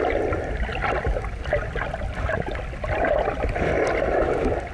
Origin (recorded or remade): recorded